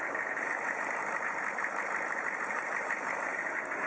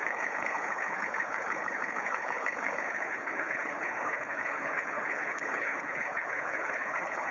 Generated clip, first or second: second